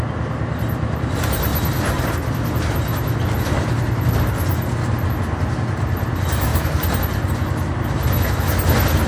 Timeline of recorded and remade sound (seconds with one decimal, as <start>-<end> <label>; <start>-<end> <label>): 0.0-9.1 recorded